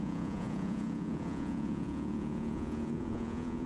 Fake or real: fake